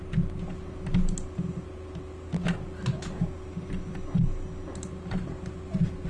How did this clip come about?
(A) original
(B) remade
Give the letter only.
A